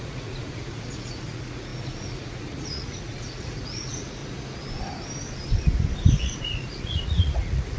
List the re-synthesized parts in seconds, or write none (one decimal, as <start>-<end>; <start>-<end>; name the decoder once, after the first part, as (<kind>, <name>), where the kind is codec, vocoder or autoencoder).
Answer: 0.0-4.2 (vocoder, Vocos); 6.2-7.8